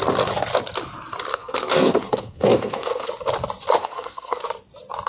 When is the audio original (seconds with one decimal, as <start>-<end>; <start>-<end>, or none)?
0.0-1.3; 3.1-3.8; 4.4-5.1